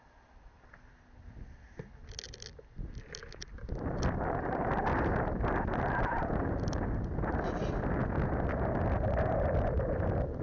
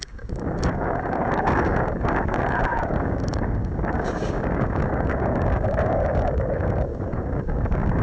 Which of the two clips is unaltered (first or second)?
first